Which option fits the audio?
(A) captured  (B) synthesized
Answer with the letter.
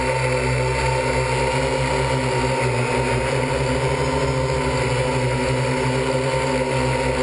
A